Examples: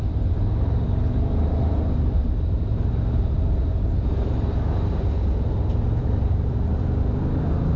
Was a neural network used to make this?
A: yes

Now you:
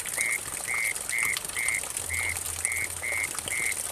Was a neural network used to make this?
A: no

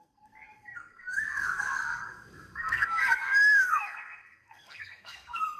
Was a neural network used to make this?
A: yes